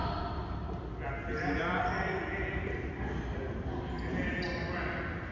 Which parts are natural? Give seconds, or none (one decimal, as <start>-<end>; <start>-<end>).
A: 0.0-5.3